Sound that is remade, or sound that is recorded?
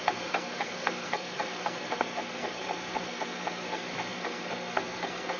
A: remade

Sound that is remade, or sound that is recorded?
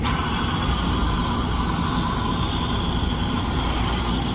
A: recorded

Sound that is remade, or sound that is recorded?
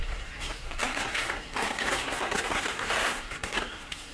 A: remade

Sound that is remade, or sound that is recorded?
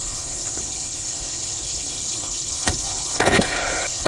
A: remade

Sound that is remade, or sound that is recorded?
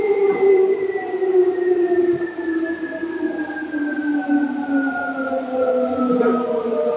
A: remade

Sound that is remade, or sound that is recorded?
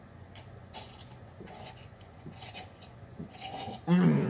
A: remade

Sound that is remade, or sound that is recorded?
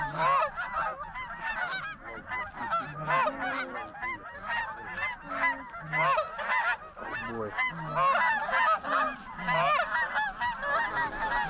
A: recorded